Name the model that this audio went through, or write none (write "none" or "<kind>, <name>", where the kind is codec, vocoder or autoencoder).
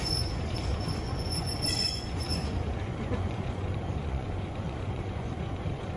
vocoder, Vocos